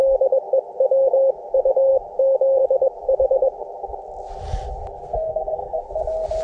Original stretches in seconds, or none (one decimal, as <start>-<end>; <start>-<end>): 0.0-5.0; 5.9-6.4